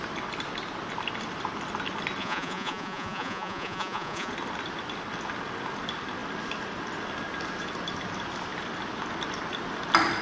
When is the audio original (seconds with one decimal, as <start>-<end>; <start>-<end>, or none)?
0.0-2.2; 4.3-10.2

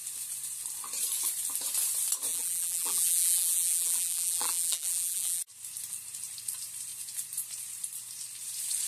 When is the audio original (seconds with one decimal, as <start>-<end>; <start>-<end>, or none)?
0.0-2.3; 5.4-8.9

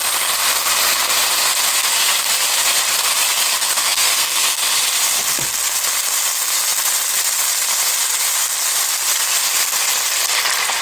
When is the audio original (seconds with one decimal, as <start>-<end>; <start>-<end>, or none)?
0.0-3.6; 4.6-10.8